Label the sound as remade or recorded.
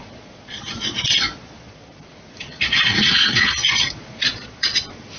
remade